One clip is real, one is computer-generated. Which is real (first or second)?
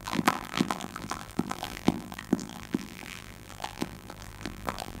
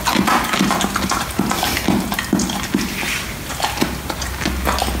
second